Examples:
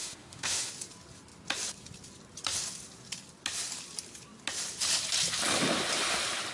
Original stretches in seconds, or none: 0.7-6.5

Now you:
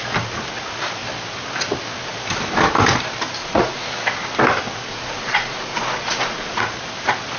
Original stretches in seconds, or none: 0.0-3.4; 3.9-4.9; 6.6-7.4

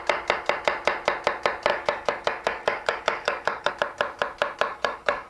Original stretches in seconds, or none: 0.0-1.7; 3.7-4.7

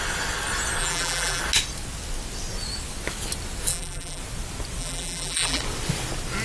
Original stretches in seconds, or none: 0.0-0.8; 1.4-3.7; 4.2-4.8; 5.6-6.4

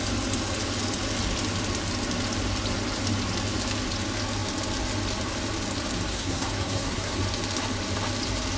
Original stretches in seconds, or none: 0.0-6.1; 7.2-8.6

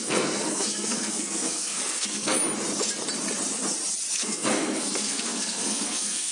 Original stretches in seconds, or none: 2.4-4.1